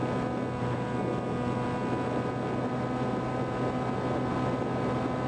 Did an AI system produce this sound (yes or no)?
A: no